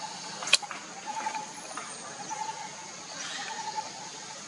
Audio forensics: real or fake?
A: real